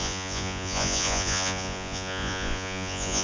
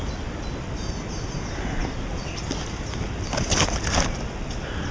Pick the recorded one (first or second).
second